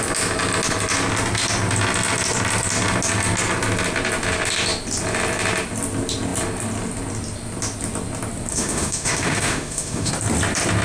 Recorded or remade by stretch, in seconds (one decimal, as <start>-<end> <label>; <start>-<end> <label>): 0.0-8.5 recorded; 8.5-10.1 remade; 10.1-10.8 recorded